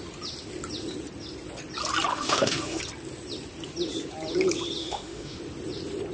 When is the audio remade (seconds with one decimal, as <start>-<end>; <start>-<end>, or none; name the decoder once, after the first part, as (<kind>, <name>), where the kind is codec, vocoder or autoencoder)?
2.1-2.8 (autoencoder, DAC-VAE); 4.8-5.4